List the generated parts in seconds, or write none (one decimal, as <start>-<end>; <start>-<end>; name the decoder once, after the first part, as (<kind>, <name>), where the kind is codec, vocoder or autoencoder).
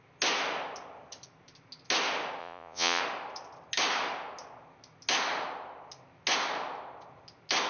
2.4-3.0 (vocoder, Vocos)